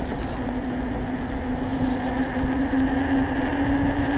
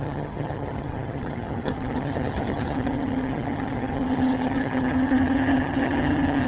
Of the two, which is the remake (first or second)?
second